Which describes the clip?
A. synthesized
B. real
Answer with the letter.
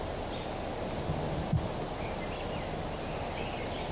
B